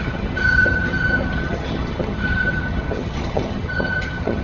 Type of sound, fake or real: fake